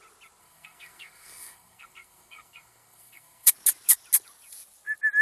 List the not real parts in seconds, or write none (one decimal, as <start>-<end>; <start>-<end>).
0.4-3.5